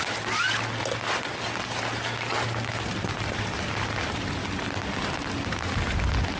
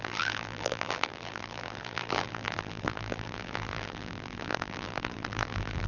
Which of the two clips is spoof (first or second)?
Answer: second